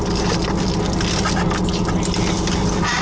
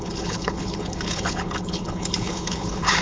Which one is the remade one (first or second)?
second